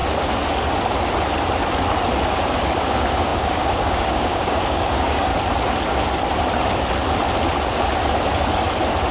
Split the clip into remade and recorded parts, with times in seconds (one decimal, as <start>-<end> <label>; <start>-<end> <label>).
0.0-2.8 recorded; 2.8-5.3 remade; 5.3-9.1 recorded